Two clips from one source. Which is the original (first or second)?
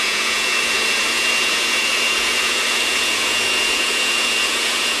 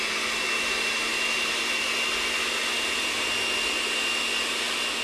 second